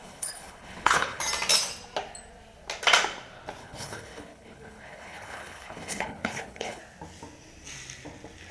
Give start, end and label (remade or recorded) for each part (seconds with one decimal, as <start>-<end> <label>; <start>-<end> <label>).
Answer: 0.0-1.2 remade; 1.2-3.6 recorded; 3.6-6.8 remade; 6.8-8.5 recorded